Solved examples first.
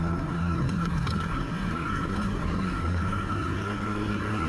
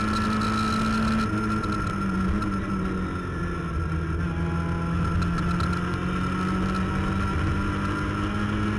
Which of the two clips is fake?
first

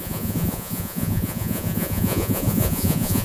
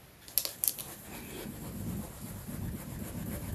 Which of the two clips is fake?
first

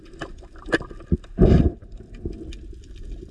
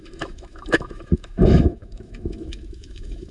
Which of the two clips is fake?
second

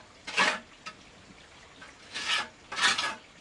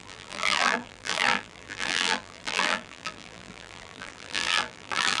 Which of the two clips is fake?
second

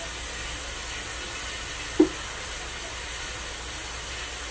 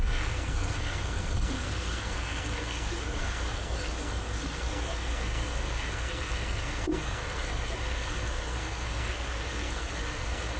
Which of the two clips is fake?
second